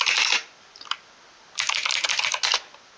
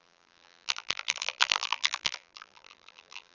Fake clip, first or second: second